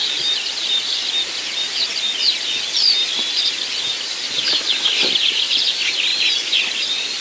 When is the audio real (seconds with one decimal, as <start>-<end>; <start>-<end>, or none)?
0.0-6.1; 6.6-7.2